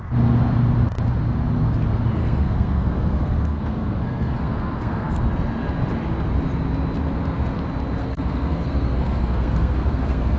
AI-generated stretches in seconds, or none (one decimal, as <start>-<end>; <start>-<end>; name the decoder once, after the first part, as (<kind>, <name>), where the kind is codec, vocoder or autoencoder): 2.2-5.1 (codec, SNAC); 8.0-10.4